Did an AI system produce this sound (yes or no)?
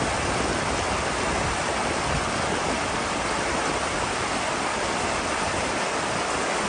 no